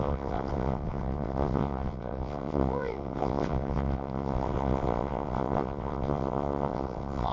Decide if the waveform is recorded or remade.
remade